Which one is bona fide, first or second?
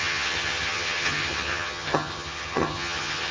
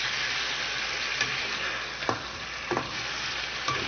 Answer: second